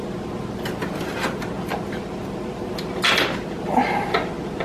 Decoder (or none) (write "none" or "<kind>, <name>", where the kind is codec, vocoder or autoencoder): none